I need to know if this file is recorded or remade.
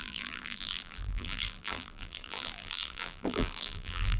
remade